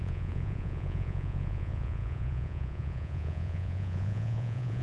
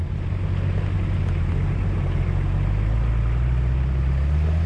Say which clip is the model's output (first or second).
first